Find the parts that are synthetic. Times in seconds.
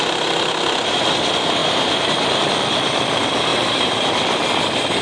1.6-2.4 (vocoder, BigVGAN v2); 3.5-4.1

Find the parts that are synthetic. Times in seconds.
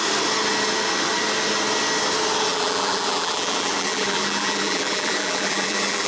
2.5-6.1 (vocoder, BigVGAN v2)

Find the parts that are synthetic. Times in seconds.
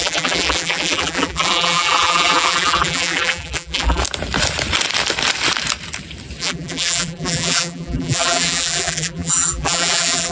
0.0-4.0 (vocoder, BigVGAN v2); 6.4-10.3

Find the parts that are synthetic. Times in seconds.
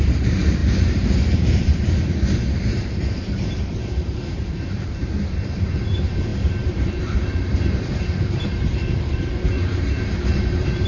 0.0-10.9 (vocoder, BigVGAN v2)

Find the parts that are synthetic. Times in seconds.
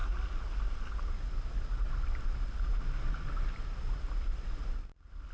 none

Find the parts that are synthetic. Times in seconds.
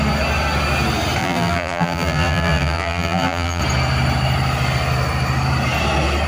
1.2-3.6 (vocoder, BigVGAN v2)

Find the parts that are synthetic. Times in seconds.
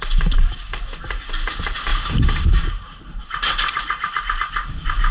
1.9-5.1 (vocoder, BigVGAN v2)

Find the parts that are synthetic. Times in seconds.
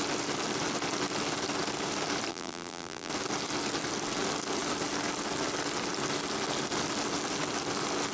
2.3-3.1 (vocoder, BigVGAN v2)